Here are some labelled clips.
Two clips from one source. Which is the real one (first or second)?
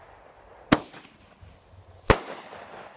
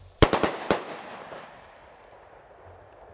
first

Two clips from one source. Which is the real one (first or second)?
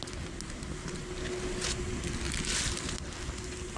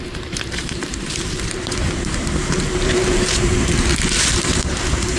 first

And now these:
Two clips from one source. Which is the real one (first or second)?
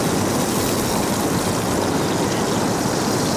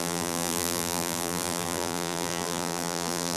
first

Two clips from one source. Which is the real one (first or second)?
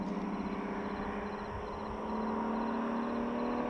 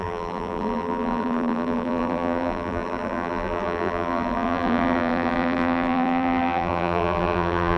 first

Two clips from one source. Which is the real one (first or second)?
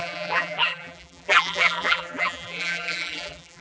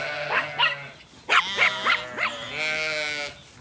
second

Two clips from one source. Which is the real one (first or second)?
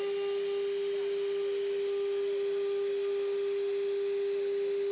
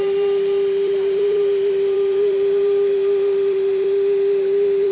first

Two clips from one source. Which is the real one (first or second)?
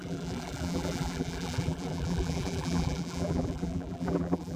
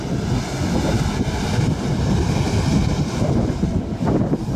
second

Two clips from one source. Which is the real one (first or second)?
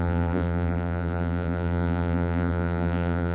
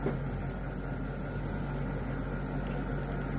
second